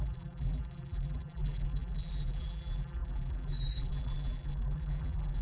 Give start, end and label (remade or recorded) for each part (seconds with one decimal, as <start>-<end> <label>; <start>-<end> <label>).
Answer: 0.0-5.4 remade